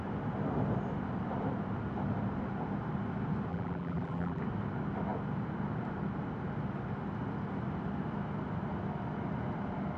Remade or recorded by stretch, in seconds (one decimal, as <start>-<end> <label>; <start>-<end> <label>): 0.0-3.5 recorded; 3.5-4.4 remade; 4.4-10.0 recorded